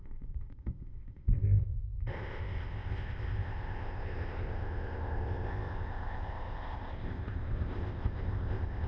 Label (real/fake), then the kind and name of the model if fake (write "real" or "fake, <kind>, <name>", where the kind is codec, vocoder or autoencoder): fake, codec, ZipCodec